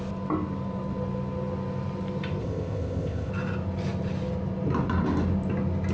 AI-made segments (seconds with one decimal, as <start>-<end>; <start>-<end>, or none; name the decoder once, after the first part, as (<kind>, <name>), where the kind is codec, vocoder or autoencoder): 2.4-3.3 (codec, ZipCodec)